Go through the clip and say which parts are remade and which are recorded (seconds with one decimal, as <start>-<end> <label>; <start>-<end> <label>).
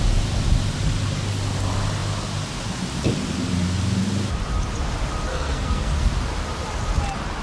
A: 0.0-5.3 recorded; 5.3-6.1 remade; 6.1-7.4 recorded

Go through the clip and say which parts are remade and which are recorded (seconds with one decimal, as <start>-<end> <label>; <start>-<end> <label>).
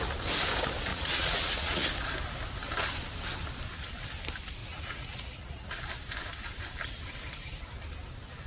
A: 0.0-0.9 recorded; 0.9-1.9 remade; 1.9-4.6 recorded; 4.6-5.8 remade; 5.8-8.5 recorded